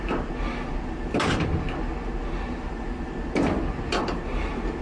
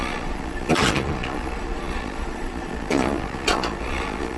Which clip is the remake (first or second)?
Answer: second